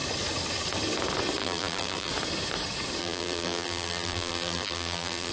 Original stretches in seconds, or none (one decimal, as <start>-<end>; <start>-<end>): 0.0-1.4; 2.1-3.0

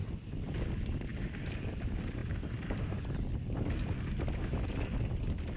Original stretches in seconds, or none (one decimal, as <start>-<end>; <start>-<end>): 0.0-5.6

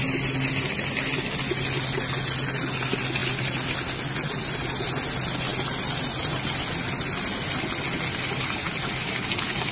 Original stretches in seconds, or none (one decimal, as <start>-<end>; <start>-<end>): 0.0-9.7